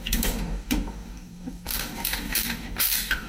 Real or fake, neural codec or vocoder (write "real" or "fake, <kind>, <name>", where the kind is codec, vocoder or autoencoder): fake, codec, DAC